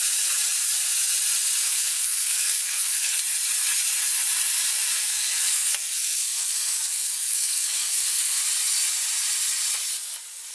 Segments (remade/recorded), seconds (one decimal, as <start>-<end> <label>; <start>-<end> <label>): 0.0-1.7 recorded; 1.7-3.2 remade; 3.2-5.0 recorded; 5.0-8.4 remade; 8.4-10.5 recorded